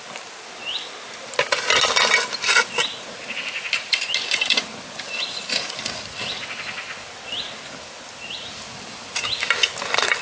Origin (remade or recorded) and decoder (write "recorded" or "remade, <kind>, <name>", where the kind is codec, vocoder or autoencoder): recorded